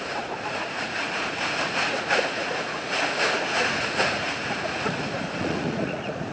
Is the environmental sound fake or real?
fake